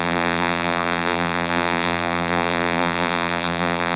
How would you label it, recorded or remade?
remade